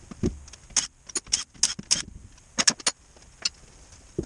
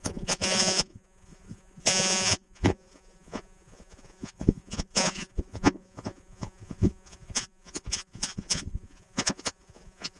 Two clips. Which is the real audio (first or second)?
first